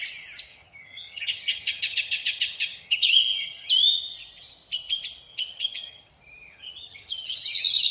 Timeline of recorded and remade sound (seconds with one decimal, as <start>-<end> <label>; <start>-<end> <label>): 0.0-0.5 recorded; 0.5-3.7 remade; 3.7-5.3 recorded; 5.3-6.1 remade; 6.1-6.5 recorded; 6.5-7.4 remade; 7.4-7.9 recorded